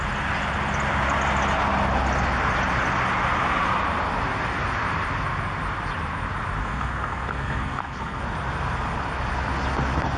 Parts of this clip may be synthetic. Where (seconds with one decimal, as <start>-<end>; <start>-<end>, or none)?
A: 6.6-8.2